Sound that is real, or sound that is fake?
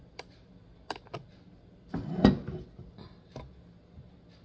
real